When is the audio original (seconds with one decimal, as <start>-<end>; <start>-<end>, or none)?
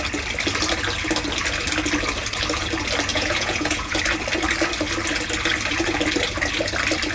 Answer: 0.0-3.1; 4.0-7.1